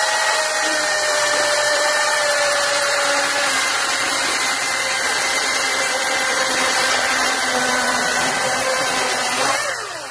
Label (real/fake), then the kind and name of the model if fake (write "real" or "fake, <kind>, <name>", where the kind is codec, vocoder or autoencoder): fake, vocoder, BigVGAN v2